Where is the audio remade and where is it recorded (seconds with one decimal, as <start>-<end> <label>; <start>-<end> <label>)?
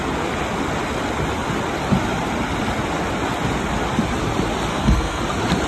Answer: 0.0-4.7 recorded; 4.7-5.2 remade; 5.2-5.7 recorded